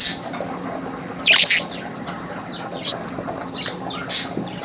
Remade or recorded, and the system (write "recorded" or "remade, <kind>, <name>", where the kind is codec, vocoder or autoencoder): recorded